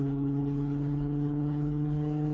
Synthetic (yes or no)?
yes